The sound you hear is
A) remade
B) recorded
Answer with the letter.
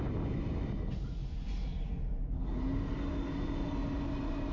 B